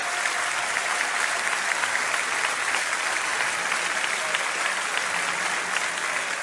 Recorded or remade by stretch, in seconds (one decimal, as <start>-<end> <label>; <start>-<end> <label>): 0.0-6.4 recorded